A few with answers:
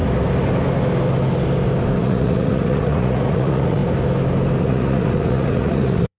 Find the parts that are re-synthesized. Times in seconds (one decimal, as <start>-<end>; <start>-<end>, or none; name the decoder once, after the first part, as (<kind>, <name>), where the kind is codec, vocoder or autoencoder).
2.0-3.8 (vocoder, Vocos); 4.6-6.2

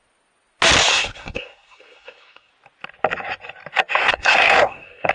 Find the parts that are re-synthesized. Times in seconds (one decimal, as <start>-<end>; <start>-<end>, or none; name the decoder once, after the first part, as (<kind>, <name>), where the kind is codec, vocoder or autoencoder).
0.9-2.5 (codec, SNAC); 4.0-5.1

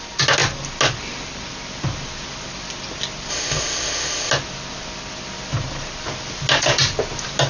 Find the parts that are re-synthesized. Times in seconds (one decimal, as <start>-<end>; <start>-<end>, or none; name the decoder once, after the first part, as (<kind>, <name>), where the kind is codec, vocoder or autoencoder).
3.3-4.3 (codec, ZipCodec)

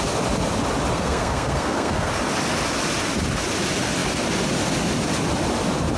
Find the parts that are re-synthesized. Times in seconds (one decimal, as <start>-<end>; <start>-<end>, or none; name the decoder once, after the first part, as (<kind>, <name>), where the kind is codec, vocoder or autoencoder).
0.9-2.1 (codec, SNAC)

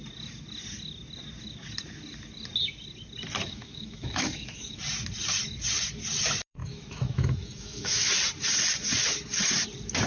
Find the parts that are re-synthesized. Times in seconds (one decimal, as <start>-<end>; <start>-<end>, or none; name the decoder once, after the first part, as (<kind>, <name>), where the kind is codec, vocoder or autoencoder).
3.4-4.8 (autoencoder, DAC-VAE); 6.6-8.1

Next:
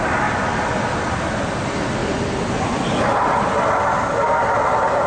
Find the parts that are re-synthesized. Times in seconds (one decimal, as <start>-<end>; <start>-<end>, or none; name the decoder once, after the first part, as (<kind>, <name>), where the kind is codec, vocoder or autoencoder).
none

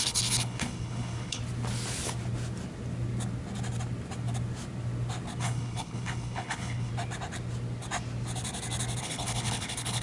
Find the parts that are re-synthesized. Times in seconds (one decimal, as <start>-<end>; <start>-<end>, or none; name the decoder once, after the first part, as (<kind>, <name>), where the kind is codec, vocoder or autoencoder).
0.0-1.4 (codec, HILCodec); 5.4-6.9; 9.0-10.0

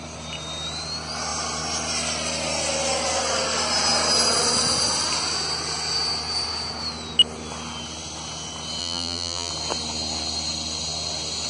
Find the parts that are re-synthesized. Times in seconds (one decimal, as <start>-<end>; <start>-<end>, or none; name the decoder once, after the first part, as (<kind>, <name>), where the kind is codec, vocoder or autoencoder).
8.8-9.5 (vocoder, BigVGAN v2)